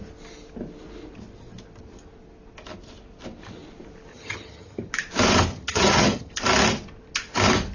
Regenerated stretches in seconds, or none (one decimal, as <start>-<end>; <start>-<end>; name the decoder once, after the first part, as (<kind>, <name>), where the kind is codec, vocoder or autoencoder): 4.1-4.9 (vocoder, HiFi-GAN); 5.5-6.3